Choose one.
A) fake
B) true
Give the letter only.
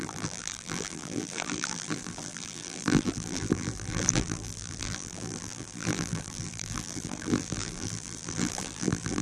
A